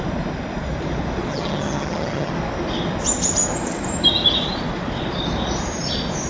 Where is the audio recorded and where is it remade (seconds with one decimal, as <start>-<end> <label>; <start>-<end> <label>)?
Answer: 0.0-1.3 recorded; 1.3-2.3 remade; 2.3-6.3 recorded